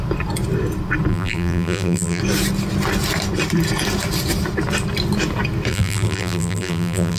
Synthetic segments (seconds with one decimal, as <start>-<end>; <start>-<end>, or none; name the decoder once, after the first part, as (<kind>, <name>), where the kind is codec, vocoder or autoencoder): 1.1-2.2 (vocoder, BigVGAN v2); 5.7-7.2